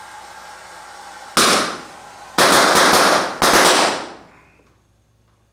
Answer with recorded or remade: recorded